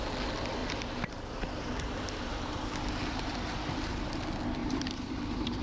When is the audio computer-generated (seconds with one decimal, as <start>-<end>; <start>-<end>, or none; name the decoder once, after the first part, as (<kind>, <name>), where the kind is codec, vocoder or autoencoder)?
0.6-4.0 (vocoder, BigVGAN v2); 4.6-5.6